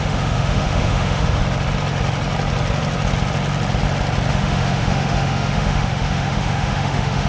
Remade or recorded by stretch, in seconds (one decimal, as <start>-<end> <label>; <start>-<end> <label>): 0.0-1.4 remade; 1.4-4.3 recorded; 4.3-7.3 remade